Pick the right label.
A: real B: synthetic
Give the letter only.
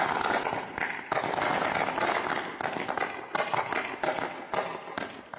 A